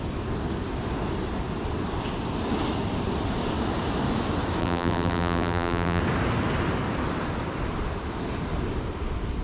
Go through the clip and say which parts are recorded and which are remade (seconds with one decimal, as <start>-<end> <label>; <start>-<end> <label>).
0.0-4.6 recorded; 4.6-6.0 remade; 6.0-9.4 recorded